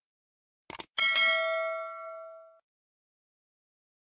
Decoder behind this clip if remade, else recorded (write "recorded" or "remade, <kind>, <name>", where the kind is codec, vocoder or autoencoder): recorded